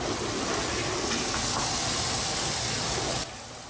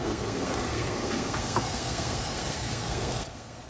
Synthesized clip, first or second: second